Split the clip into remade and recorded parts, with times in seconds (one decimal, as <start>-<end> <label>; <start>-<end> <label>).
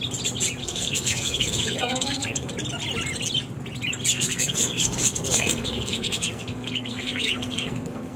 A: 0.0-0.6 recorded; 0.6-2.5 remade; 2.5-4.1 recorded; 4.1-8.2 remade